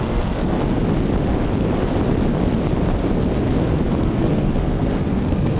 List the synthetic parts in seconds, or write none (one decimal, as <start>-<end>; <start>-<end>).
0.0-0.6; 4.0-5.6

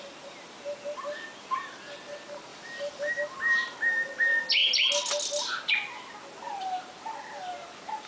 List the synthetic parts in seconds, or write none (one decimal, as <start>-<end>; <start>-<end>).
2.5-3.1

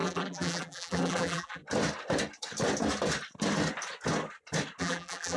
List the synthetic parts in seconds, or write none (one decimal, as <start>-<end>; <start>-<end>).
0.0-1.6; 4.8-5.4

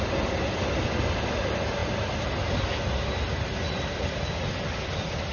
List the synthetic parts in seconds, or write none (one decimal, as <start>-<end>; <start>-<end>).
none

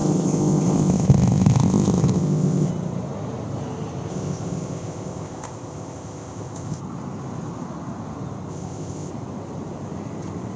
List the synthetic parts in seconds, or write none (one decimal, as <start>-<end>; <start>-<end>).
0.0-2.7; 4.1-6.8; 8.5-9.1